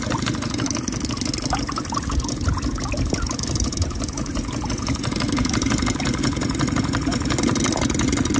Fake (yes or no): no